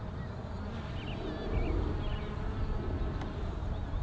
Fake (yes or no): no